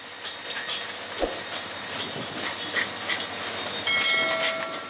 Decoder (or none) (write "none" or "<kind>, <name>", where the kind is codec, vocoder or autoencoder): none